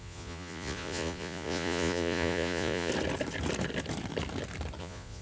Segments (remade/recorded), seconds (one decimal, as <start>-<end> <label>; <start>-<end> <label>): 0.0-2.9 remade; 2.9-4.8 recorded; 4.8-5.2 remade